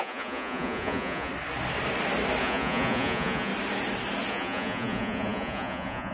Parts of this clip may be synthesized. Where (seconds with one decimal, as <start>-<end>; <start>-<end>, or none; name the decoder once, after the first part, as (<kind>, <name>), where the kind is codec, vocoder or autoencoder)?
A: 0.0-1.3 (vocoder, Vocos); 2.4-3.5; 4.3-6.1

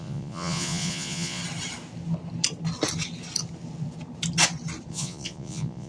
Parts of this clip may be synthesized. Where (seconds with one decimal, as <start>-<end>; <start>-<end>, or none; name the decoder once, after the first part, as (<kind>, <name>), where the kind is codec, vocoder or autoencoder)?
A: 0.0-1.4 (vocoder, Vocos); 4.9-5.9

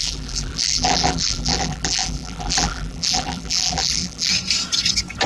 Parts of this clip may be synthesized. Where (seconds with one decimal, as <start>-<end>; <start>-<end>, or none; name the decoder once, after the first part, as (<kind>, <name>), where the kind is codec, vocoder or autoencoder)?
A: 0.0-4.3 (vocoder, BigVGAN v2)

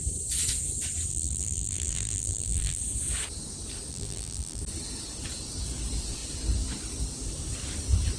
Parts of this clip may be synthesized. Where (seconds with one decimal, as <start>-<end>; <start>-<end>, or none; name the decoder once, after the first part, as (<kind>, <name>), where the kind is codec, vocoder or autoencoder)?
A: 1.1-2.8 (vocoder, BigVGAN v2); 3.9-4.6

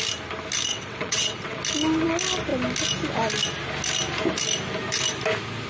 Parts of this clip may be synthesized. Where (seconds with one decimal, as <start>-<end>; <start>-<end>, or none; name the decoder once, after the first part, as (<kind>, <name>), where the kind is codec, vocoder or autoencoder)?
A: 0.7-1.6 (vocoder, WaveNeXt)

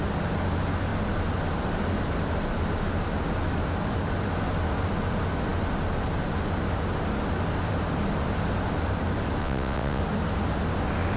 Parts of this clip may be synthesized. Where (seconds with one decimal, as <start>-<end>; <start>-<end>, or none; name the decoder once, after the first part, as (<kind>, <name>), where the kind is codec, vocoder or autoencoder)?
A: 9.4-10.0 (vocoder, WaveNeXt)

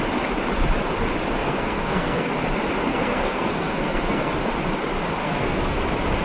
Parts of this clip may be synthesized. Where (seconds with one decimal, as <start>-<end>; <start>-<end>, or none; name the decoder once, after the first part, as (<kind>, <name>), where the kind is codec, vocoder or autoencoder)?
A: 1.4-2.3 (codec, SNAC); 2.9-4.3; 5.2-5.8